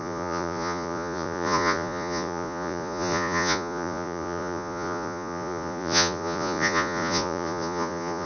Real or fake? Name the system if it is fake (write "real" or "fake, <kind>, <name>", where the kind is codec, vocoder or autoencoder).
fake, vocoder, Vocos